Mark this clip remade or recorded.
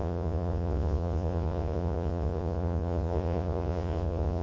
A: remade